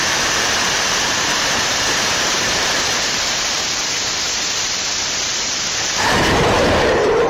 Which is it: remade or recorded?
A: remade